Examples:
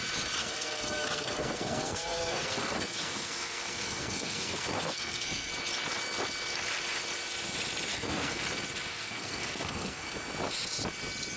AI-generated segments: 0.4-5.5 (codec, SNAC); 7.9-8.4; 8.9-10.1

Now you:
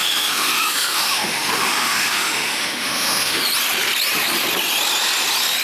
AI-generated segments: 0.0-3.4 (autoencoder, DAC-VAE)

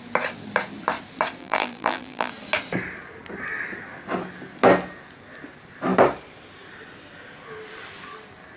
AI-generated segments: 1.4-2.3 (vocoder, BigVGAN v2)

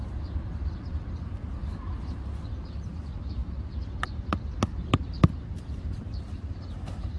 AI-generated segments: none

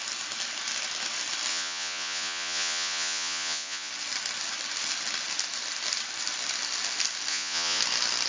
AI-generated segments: 1.5-3.9 (vocoder, Vocos); 7.3-7.8